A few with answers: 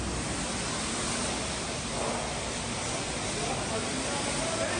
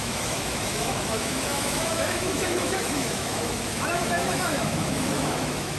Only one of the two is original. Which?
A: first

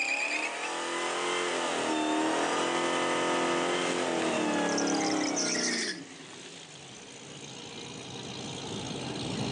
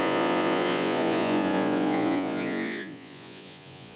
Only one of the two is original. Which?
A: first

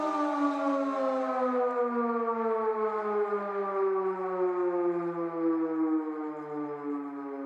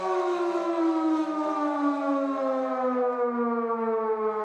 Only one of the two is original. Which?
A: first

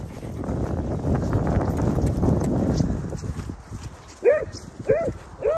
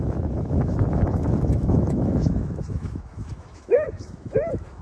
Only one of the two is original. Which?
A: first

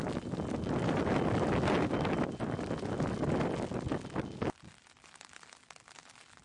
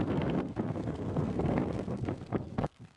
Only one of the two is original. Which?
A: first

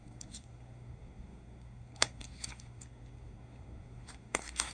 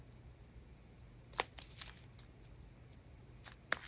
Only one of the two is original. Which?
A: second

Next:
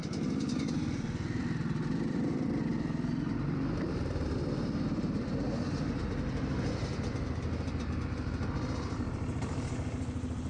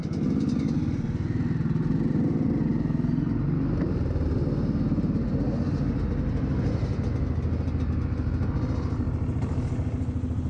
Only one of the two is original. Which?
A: second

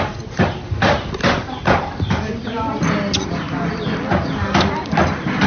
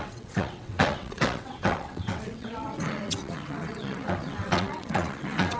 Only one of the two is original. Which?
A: first